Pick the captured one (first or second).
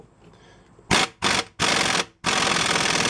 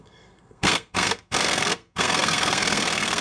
first